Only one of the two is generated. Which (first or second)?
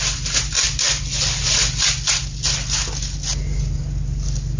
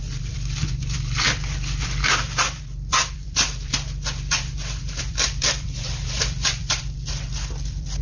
second